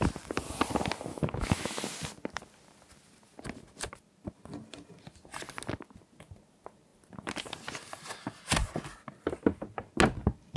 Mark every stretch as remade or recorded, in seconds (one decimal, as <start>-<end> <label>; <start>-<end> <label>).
0.0-1.1 recorded; 1.1-1.8 remade; 1.8-10.6 recorded